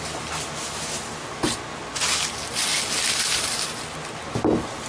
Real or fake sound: real